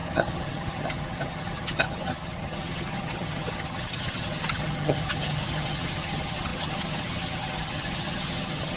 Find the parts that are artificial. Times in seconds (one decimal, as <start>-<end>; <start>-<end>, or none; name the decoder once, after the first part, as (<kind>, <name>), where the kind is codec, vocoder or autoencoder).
0.0-8.8 (vocoder, HiFi-GAN)